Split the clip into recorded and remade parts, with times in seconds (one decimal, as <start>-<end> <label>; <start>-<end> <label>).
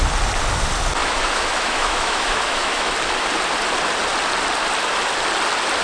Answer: 0.0-1.0 recorded; 1.0-2.9 remade; 2.9-5.8 recorded